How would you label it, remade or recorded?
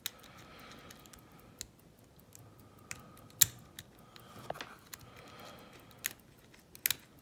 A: recorded